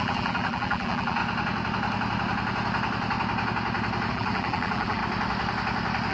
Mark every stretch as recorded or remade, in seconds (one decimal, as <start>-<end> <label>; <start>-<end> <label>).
0.0-1.2 remade; 1.2-4.1 recorded; 4.1-5.0 remade; 5.0-6.1 recorded